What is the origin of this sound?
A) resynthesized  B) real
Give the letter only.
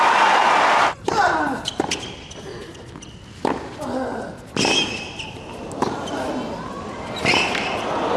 B